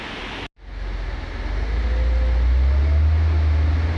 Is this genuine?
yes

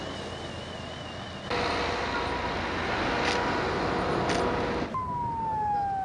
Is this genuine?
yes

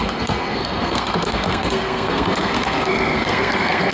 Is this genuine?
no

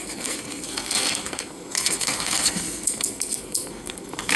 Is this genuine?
no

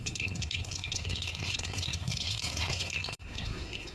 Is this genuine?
no